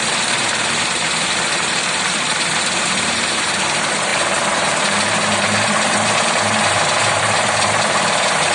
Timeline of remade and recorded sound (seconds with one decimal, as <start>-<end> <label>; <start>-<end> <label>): 0.0-8.5 remade

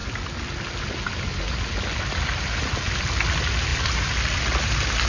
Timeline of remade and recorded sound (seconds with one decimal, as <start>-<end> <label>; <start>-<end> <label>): 0.0-1.9 recorded; 1.9-2.6 remade; 2.6-3.7 recorded; 3.7-4.6 remade; 4.6-5.1 recorded

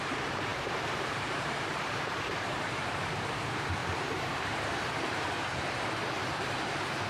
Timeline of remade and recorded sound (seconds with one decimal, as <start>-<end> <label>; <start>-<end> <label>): 0.0-7.1 remade

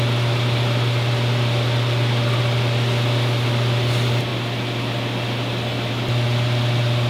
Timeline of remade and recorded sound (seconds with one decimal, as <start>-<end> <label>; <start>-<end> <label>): 0.0-7.1 recorded

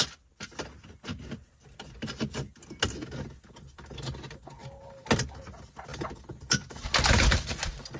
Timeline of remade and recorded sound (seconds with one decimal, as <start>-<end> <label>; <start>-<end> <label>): 0.0-8.0 recorded

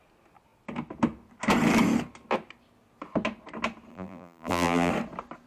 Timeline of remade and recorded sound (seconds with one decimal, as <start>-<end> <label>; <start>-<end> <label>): 0.0-3.9 recorded; 3.9-4.9 remade; 4.9-5.5 recorded